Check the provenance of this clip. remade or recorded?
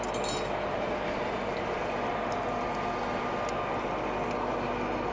recorded